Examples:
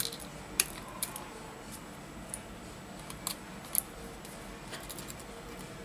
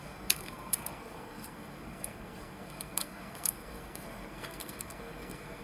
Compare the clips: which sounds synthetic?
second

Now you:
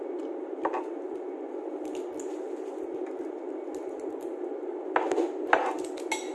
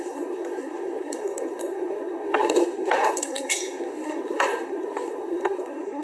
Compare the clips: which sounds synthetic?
second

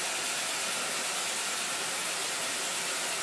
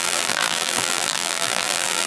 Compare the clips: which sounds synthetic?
second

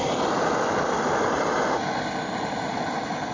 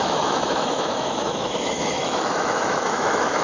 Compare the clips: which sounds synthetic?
second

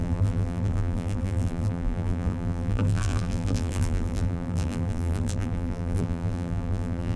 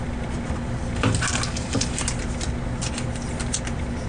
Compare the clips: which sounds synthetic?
first